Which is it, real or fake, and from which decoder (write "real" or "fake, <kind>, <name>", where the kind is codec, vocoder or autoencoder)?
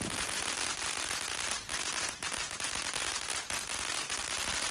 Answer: real